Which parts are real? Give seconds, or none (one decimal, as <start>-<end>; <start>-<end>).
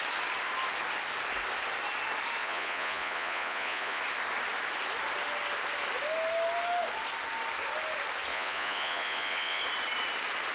0.0-2.4; 4.0-8.3; 9.6-10.5